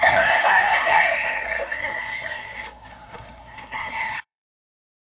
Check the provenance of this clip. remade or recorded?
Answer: remade